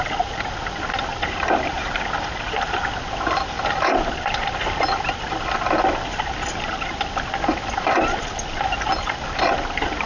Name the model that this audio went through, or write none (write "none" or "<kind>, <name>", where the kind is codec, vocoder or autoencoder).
none